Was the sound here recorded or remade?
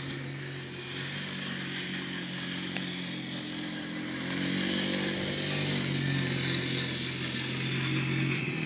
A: recorded